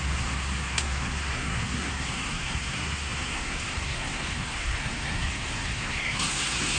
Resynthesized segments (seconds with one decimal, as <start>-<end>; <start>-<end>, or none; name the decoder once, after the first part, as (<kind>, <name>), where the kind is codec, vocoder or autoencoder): 0.0-6.8 (codec, SNAC)